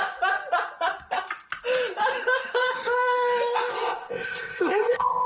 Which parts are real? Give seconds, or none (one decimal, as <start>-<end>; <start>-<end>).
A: 0.0-3.7